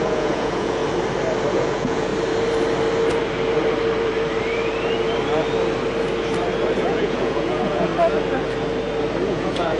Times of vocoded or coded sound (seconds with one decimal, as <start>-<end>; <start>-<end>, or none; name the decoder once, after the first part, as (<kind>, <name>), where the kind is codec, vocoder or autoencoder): 0.0-0.8 (vocoder, Vocos); 1.5-2.1; 6.8-7.9; 9.3-9.8